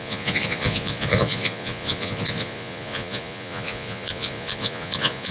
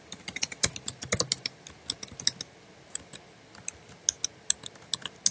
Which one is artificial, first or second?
first